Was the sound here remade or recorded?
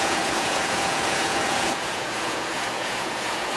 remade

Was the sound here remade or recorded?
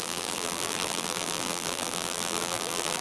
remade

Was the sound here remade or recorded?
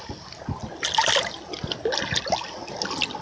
recorded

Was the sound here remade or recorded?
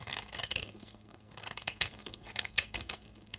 remade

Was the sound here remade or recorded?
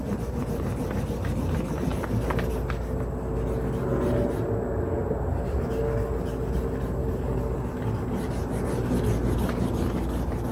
recorded